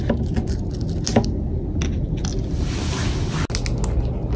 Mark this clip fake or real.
real